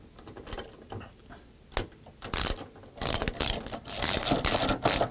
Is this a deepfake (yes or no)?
no